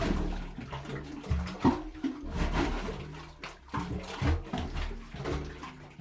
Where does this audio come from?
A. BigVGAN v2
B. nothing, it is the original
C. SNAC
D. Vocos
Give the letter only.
B